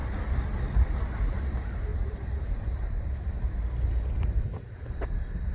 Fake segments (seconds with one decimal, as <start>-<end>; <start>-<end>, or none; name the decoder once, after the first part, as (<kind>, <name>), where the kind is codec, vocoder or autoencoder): 1.4-5.5 (vocoder, BigVGAN v2)